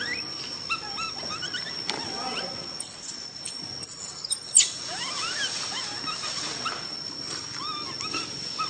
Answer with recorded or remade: recorded